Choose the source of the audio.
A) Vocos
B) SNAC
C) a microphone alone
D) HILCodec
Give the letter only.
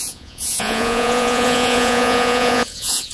A